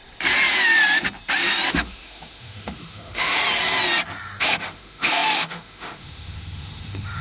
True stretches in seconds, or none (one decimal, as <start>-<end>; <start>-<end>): 0.0-1.7; 3.4-4.4